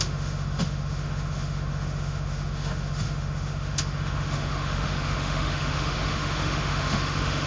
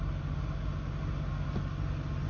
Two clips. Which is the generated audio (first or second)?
first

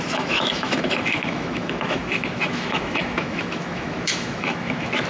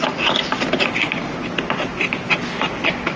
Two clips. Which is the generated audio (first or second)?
first